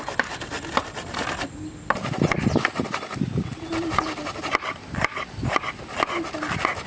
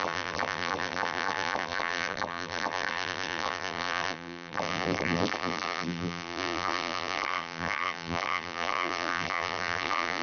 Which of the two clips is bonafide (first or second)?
first